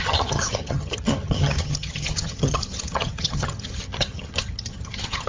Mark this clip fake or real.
fake